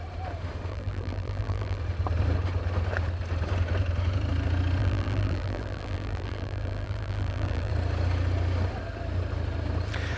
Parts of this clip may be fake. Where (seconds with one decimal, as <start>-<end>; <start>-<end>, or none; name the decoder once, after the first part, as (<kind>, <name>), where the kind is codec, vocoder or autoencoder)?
0.7-1.8 (vocoder, BigVGAN v2); 4.8-7.7